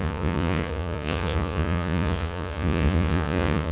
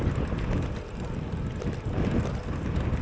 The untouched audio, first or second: second